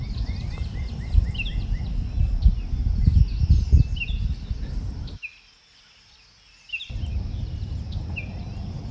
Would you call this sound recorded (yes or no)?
yes